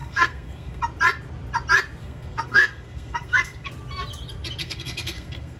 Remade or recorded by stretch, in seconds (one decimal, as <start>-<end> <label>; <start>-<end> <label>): 0.0-0.8 remade; 0.8-2.0 recorded; 2.0-3.7 remade; 3.7-4.6 recorded; 4.6-5.6 remade